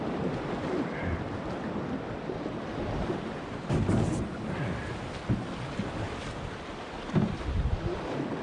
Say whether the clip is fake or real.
real